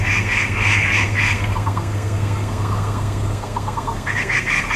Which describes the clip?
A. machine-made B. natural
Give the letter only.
A